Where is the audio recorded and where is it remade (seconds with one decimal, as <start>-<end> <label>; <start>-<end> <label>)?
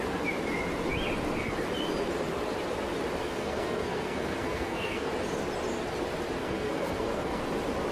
0.0-3.2 recorded; 3.2-5.1 remade; 5.1-6.4 recorded; 6.4-7.4 remade; 7.4-7.9 recorded